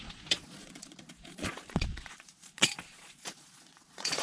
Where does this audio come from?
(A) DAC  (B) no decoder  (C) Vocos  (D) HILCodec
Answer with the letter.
C